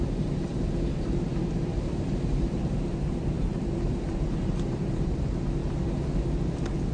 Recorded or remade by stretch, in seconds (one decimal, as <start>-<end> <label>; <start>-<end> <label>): 0.0-5.6 remade; 5.6-6.9 recorded

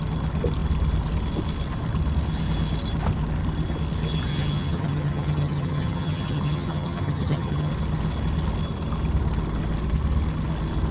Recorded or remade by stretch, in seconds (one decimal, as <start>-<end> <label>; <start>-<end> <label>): 0.0-4.3 recorded; 4.3-7.7 remade; 7.7-10.9 recorded

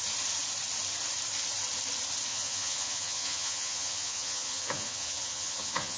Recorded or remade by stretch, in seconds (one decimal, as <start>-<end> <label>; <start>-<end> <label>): 0.0-2.3 recorded; 2.3-6.0 remade

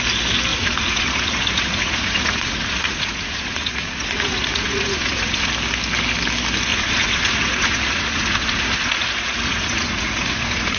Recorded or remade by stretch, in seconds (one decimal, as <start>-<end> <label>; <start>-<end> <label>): 0.0-0.5 recorded; 0.5-5.5 remade; 5.5-6.7 recorded; 6.7-10.8 remade

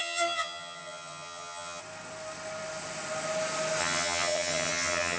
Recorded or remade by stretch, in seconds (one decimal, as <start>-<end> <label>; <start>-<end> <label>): 0.0-1.8 remade; 1.8-3.8 recorded; 3.8-5.2 remade

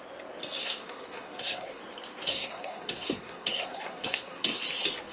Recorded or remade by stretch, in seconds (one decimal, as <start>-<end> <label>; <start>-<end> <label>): 0.0-0.6 recorded; 0.6-1.8 remade; 1.8-2.3 recorded; 2.3-4.6 remade; 4.6-5.1 recorded

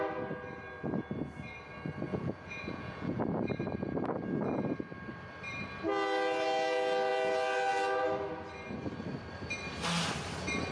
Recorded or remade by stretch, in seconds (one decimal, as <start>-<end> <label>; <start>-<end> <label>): 0.0-2.1 recorded; 2.1-3.2 remade; 3.2-10.7 recorded